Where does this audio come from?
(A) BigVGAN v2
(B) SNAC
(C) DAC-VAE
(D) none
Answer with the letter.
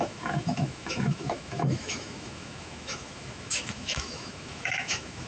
C